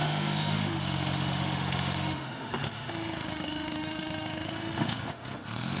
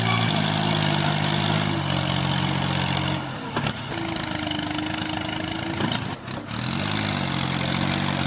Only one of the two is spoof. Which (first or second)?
first